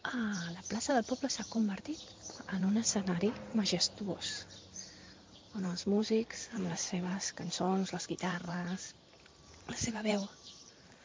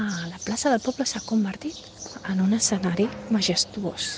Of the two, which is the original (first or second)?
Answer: second